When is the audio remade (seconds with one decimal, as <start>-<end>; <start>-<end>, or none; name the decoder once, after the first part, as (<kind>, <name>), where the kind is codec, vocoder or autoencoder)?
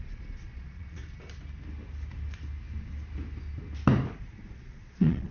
0.0-1.0 (vocoder, Vocos); 4.2-5.3